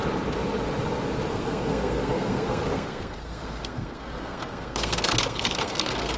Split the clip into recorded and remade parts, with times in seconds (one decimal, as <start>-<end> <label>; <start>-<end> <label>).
0.0-1.3 recorded; 1.3-6.2 remade